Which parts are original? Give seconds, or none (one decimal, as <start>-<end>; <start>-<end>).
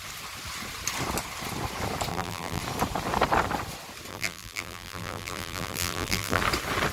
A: 0.0-2.1; 2.6-4.1; 6.4-6.9